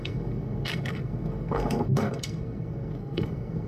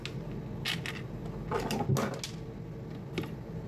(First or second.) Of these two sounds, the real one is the second